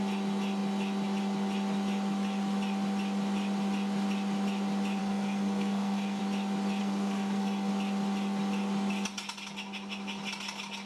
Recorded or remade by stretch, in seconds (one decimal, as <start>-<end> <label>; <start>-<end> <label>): 0.0-5.0 recorded; 5.0-6.2 remade; 6.2-6.8 recorded; 6.8-7.7 remade; 7.7-10.9 recorded